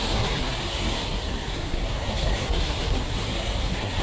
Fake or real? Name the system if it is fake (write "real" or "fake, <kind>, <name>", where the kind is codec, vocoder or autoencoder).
fake, codec, SNAC